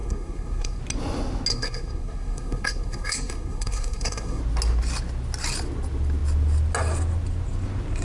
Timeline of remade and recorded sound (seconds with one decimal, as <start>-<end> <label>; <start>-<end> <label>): 0.0-0.8 remade; 0.8-1.5 recorded; 1.5-4.4 remade; 4.4-8.0 recorded